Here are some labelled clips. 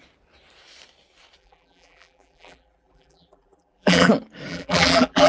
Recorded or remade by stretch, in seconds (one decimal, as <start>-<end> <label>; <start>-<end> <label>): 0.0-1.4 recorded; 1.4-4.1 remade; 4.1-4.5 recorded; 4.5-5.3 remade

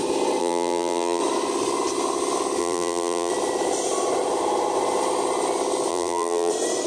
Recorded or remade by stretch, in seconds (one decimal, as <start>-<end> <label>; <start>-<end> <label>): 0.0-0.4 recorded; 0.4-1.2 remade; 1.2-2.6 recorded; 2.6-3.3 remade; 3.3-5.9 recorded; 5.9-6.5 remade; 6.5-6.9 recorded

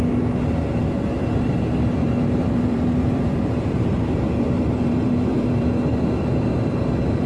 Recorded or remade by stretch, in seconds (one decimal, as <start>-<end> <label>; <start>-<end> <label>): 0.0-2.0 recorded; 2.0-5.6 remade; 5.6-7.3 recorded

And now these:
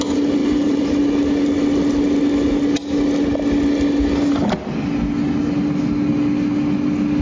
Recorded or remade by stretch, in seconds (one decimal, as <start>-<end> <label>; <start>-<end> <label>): 0.0-0.4 recorded; 0.4-0.9 remade; 0.9-7.2 recorded

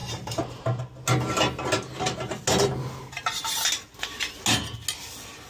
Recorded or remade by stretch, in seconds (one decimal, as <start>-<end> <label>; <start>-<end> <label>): 0.0-0.8 remade; 0.8-5.5 recorded